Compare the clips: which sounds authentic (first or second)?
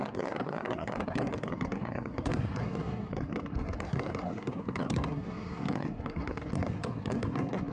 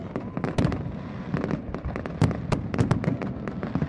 second